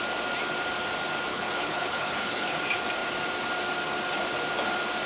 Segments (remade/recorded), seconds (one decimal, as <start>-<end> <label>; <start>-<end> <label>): 0.0-1.3 recorded; 1.3-2.6 remade; 2.6-5.1 recorded